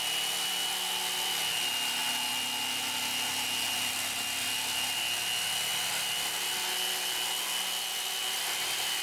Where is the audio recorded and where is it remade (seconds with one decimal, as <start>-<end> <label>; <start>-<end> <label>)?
0.0-9.0 recorded